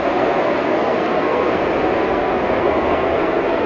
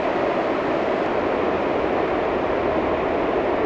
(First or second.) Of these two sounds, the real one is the second